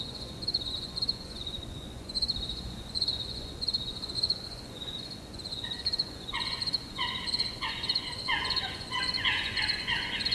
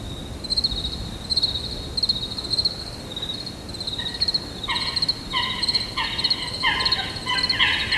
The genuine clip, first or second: second